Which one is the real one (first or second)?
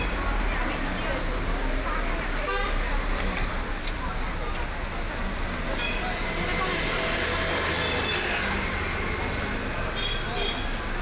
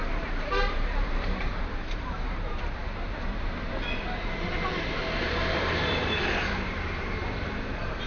first